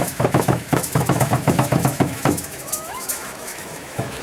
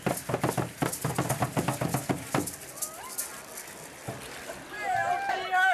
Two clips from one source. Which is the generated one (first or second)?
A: first